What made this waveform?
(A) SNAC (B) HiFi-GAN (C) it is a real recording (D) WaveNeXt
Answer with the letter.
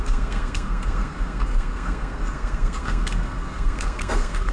A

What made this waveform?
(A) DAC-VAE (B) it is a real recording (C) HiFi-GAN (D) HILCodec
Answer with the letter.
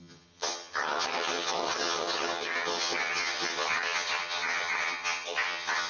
C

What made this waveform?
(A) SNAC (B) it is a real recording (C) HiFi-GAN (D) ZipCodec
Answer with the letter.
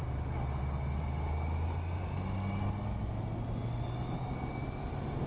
B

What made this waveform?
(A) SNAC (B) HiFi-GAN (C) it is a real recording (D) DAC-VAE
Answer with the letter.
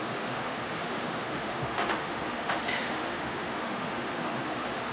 D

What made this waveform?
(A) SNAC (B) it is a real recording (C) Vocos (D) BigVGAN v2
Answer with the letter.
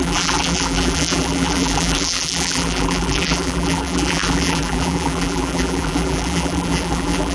D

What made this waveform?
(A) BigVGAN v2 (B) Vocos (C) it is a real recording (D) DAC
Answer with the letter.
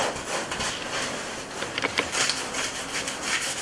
C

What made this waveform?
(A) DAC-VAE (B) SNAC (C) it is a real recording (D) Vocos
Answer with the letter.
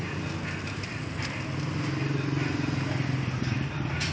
C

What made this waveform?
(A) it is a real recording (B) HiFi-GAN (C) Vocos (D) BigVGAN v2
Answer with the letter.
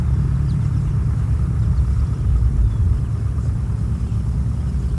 A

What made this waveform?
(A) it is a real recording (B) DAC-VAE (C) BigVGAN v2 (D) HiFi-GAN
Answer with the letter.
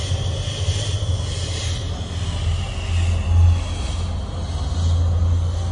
A